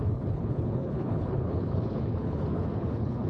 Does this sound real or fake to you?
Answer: fake